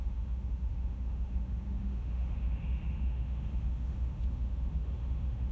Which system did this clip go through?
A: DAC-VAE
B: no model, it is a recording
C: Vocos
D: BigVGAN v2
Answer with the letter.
A